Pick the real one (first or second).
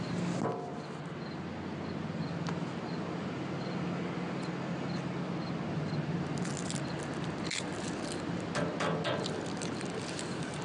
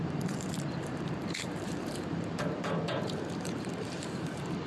first